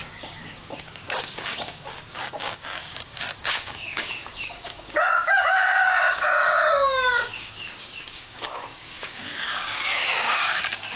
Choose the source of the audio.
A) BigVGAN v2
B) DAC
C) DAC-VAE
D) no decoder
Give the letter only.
B